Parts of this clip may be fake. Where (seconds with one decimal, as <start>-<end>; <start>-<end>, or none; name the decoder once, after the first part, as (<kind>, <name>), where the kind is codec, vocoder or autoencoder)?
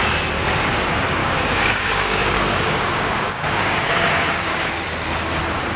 1.2-4.7 (codec, DAC)